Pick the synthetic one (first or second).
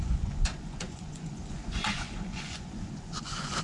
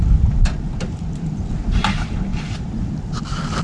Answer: first